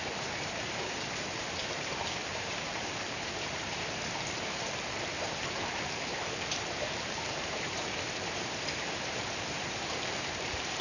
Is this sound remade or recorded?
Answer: remade